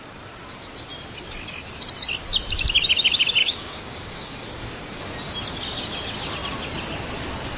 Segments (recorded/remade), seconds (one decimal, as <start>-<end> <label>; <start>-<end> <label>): 0.0-3.4 recorded; 3.4-5.0 remade; 5.0-7.6 recorded

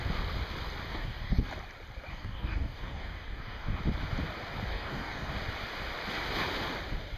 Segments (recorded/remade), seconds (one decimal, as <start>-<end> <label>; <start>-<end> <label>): 0.0-0.9 recorded; 0.9-1.5 remade; 1.5-2.1 recorded; 2.1-3.8 remade; 3.8-4.7 recorded; 4.7-5.3 remade; 5.3-7.2 recorded

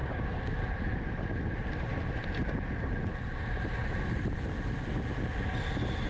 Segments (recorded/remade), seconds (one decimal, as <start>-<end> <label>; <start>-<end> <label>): 0.0-0.7 remade; 0.7-6.1 recorded

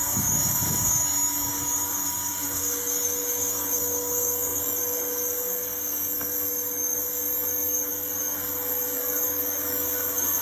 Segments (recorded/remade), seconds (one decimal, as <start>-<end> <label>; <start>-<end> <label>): 0.0-10.4 remade

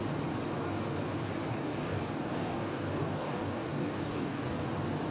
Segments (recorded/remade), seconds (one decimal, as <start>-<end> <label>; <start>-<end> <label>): 0.0-1.5 recorded; 1.5-4.6 remade; 4.6-5.1 recorded

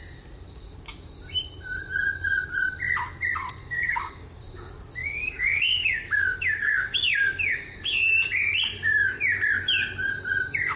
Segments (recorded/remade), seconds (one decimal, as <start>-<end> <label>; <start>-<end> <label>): 0.0-3.6 recorded; 3.6-4.4 remade; 4.4-5.0 recorded; 5.0-7.8 remade; 7.8-10.8 recorded

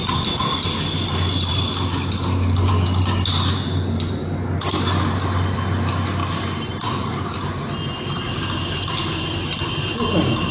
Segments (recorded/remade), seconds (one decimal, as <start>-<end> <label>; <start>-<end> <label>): 0.0-10.5 recorded

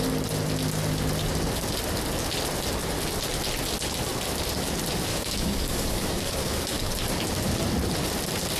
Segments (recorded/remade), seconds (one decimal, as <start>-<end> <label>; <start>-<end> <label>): 0.0-5.1 recorded; 5.1-6.9 remade; 6.9-8.6 recorded